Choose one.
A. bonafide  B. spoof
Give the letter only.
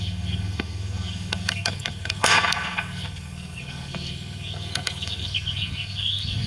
B